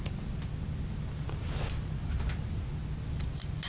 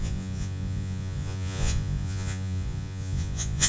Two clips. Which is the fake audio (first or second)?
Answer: second